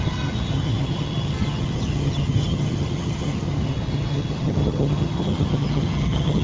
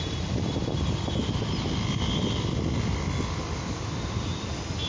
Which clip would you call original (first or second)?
second